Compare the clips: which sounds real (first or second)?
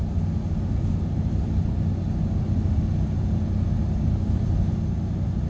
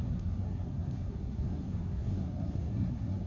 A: first